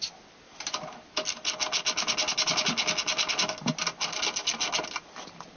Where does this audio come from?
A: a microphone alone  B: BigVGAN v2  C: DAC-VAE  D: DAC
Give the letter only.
A